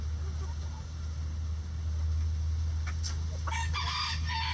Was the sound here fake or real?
real